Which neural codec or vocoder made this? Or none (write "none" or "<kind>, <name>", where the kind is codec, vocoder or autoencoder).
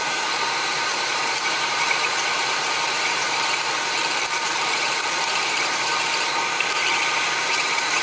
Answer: vocoder, BigVGAN v2